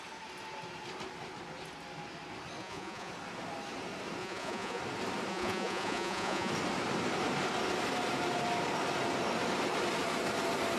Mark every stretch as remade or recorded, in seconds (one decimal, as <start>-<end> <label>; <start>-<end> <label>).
0.0-2.6 recorded; 2.6-3.1 remade; 3.1-4.2 recorded; 4.2-4.8 remade; 4.8-5.3 recorded; 5.3-6.5 remade; 6.5-10.8 recorded